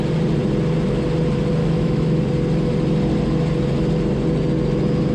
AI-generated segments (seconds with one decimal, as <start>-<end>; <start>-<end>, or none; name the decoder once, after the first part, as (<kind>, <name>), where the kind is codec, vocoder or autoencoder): 1.6-2.2 (autoencoder, DAC-VAE)